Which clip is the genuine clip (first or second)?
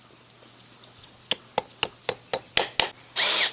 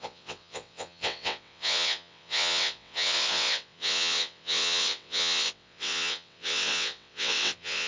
first